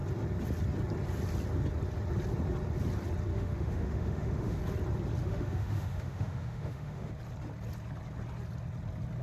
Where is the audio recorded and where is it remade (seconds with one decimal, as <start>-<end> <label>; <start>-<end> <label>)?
0.0-3.3 recorded; 3.3-4.6 remade; 4.6-5.2 recorded; 5.2-7.1 remade; 7.1-9.2 recorded